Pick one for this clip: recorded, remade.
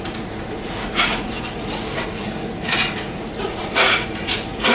remade